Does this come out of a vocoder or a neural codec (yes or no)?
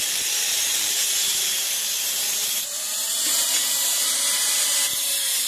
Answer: yes